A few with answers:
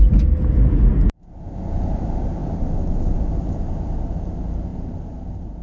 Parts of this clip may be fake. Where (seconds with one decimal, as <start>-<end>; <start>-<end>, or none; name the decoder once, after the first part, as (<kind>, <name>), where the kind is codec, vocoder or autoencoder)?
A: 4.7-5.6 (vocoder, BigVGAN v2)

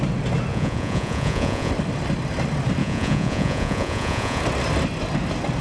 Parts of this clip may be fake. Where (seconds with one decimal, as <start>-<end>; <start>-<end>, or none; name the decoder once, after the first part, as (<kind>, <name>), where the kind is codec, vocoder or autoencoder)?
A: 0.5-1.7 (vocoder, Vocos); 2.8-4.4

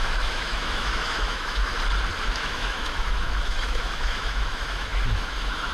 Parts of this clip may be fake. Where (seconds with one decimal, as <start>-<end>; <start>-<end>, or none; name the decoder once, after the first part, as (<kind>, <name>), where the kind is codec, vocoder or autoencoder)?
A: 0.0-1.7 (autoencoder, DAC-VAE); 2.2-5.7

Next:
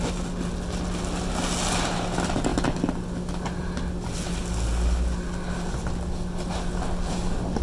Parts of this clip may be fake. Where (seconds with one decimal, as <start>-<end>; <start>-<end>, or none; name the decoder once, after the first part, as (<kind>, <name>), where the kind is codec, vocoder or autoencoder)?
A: none

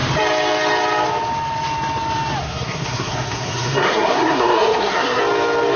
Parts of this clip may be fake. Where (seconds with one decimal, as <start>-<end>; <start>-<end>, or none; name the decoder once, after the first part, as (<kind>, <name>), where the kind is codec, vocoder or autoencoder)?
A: 2.4-5.2 (codec, SNAC)

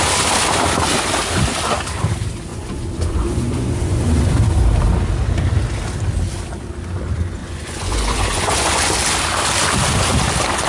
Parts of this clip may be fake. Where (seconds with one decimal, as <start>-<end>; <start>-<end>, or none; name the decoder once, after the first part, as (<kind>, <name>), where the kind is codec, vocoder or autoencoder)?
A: 2.5-4.4 (vocoder, Vocos); 7.4-8.9

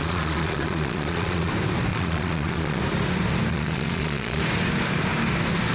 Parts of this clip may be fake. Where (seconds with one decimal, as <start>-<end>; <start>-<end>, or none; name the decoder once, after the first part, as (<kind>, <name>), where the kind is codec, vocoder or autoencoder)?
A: 0.0-1.5 (vocoder, Vocos); 1.9-2.8; 3.5-4.4

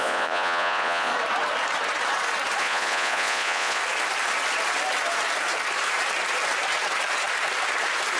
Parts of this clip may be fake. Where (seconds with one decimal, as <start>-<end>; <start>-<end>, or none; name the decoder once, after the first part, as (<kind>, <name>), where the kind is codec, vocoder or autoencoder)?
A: 0.0-1.1 (vocoder, Vocos); 2.6-3.8